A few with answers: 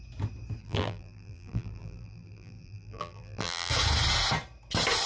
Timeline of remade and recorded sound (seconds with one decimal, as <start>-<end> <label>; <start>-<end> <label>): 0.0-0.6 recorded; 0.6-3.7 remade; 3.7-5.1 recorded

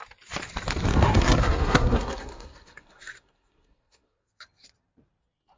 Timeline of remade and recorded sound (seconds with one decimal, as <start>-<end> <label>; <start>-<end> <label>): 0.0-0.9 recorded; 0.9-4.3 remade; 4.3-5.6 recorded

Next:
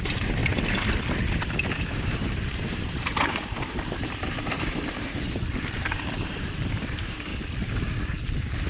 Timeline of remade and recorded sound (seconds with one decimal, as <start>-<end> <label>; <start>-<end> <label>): 0.0-0.4 remade; 0.4-1.9 recorded; 1.9-7.3 remade; 7.3-8.7 recorded

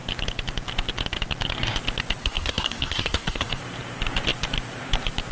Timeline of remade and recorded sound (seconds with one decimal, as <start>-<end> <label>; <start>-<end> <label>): 0.0-2.2 recorded; 2.2-3.6 remade; 3.6-5.3 recorded